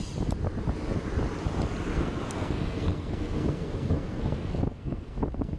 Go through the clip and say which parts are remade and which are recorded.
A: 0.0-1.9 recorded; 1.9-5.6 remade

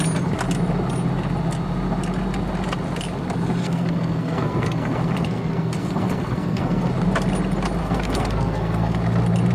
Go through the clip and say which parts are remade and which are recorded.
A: 0.0-3.6 recorded; 3.6-6.9 remade; 6.9-7.8 recorded; 7.8-9.0 remade; 9.0-9.5 recorded